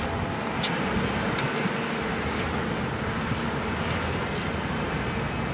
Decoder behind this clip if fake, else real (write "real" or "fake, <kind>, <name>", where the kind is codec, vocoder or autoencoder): real